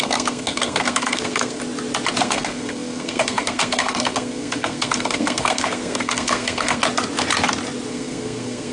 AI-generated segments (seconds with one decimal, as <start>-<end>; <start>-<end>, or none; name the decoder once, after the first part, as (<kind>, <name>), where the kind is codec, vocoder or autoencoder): 0.0-1.6 (codec, SNAC); 2.1-6.8; 7.9-8.7